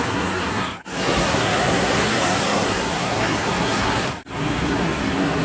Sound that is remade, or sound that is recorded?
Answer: remade